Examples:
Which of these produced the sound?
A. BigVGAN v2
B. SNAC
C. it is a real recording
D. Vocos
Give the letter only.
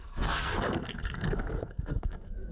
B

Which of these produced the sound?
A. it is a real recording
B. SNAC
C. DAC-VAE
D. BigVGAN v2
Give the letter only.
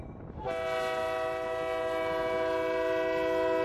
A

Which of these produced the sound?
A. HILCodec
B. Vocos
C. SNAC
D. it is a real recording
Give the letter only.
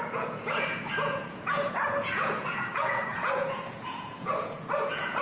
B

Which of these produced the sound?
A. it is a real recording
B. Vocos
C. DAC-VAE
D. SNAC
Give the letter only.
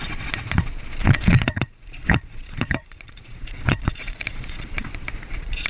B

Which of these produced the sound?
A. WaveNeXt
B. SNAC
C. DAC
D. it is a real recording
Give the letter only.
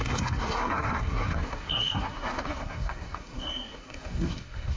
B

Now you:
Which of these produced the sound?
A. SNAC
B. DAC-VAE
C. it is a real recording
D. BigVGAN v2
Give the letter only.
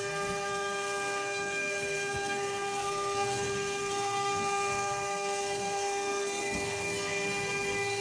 A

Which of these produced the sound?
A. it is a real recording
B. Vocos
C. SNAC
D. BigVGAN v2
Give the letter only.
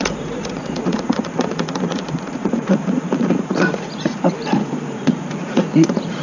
B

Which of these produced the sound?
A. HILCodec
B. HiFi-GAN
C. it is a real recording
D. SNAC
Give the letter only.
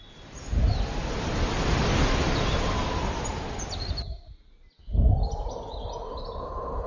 C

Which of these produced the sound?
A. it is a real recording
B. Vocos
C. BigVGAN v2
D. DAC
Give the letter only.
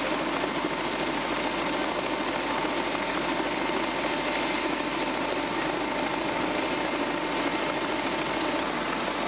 A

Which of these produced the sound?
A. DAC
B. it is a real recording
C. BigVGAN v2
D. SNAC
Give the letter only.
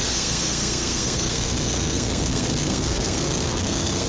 D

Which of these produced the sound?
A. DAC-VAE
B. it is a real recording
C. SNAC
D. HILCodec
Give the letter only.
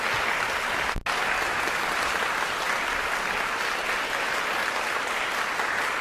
B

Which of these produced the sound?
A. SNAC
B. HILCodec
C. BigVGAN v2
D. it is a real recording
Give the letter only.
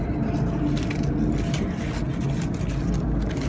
D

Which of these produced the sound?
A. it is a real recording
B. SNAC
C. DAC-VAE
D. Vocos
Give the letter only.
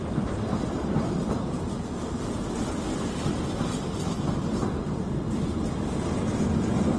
A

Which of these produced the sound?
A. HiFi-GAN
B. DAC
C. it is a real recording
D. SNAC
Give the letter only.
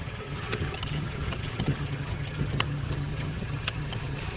A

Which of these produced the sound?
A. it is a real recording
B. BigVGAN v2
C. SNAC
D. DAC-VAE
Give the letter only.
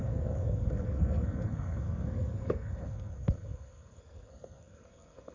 C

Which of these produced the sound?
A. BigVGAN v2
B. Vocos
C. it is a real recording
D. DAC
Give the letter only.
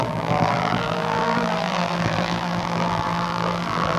A